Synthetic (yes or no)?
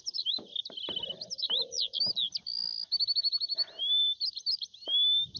no